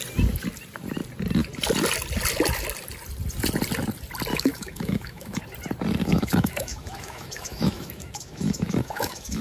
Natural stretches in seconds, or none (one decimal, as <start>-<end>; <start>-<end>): 0.0-4.3; 5.4-6.0